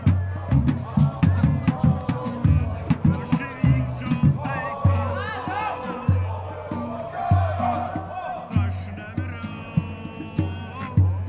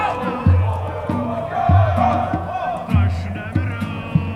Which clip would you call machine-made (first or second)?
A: second